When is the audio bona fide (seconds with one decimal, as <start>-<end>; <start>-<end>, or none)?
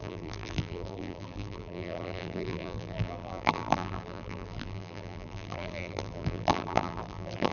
none